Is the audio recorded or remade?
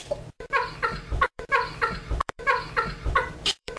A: remade